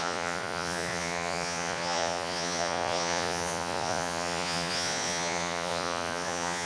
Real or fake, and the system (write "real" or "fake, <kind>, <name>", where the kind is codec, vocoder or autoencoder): fake, vocoder, Vocos